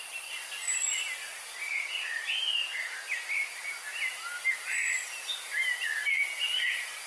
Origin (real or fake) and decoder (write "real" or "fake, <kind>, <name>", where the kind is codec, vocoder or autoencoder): real